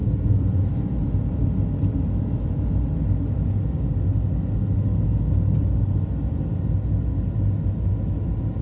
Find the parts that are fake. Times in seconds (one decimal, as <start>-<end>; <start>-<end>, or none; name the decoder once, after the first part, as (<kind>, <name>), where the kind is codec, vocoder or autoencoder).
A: 0.0-0.6 (vocoder, Vocos)